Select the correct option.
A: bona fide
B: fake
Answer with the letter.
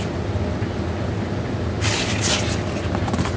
A